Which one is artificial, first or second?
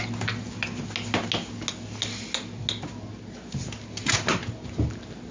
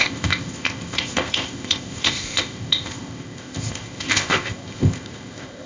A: second